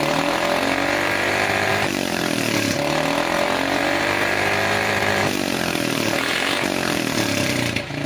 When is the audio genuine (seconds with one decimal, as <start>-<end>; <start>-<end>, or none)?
none